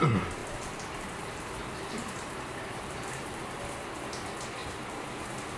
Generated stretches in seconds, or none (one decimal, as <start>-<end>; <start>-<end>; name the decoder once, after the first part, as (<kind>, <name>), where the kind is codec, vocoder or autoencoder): 0.4-3.6 (vocoder, BigVGAN v2); 4.6-5.6